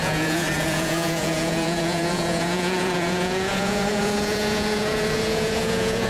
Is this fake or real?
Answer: fake